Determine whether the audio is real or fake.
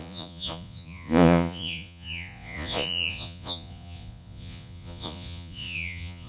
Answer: fake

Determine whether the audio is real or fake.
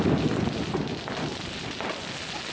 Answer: real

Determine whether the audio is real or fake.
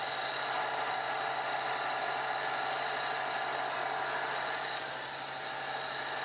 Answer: real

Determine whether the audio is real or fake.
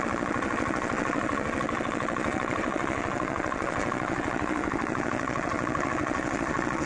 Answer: fake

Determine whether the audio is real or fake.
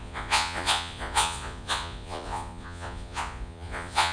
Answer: fake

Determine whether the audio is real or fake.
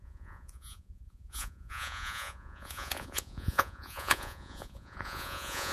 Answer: fake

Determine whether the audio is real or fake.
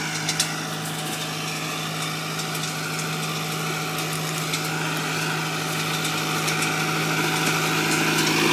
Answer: real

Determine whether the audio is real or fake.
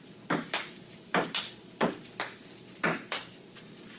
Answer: real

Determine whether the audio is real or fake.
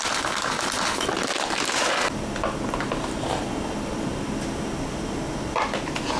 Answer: real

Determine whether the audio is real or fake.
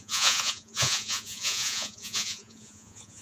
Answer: fake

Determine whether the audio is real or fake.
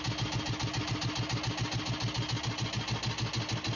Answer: real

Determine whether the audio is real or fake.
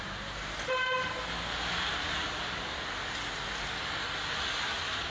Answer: real